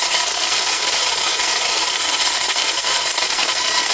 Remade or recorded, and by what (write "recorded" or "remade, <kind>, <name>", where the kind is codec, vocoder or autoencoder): remade, codec, SNAC